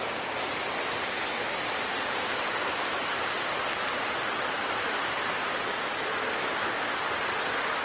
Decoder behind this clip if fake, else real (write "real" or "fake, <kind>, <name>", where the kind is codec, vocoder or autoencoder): real